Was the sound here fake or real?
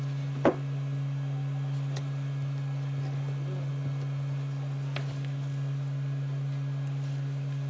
real